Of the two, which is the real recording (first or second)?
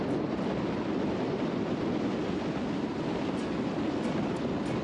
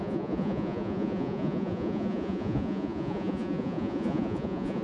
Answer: first